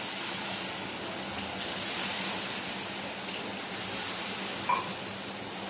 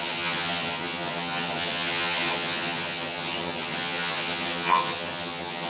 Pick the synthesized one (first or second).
second